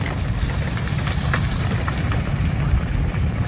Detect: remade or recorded recorded